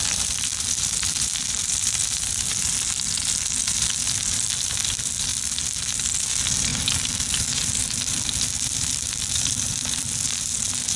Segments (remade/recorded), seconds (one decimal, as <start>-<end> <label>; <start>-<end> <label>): 0.0-5.3 remade; 5.3-6.3 recorded; 6.3-6.7 remade; 6.7-8.7 recorded; 8.7-11.0 remade

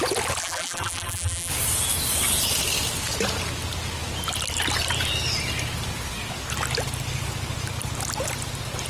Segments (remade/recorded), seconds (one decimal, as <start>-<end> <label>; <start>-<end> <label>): 0.0-0.4 recorded; 0.4-1.5 remade; 1.5-8.9 recorded

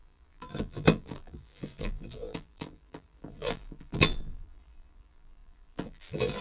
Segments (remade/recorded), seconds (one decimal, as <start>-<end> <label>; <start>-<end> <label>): 0.0-6.4 remade

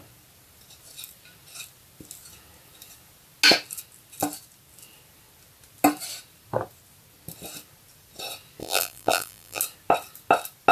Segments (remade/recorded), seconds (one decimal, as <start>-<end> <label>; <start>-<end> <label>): 0.0-8.6 recorded; 8.6-9.6 remade; 9.6-10.7 recorded

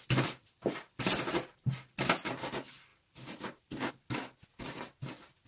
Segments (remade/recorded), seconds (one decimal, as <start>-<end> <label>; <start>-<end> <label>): 0.0-2.9 recorded; 2.9-3.9 remade; 3.9-5.5 recorded